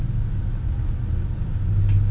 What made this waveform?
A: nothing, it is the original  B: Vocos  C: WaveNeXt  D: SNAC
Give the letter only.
A